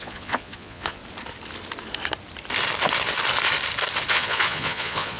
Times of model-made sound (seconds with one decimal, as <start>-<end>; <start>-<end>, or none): 0.0-1.0; 4.1-5.2